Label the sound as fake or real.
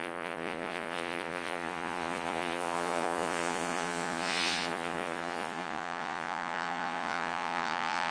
fake